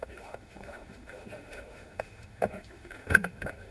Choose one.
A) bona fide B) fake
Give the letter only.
B